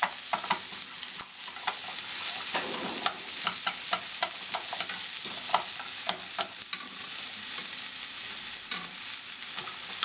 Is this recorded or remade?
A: recorded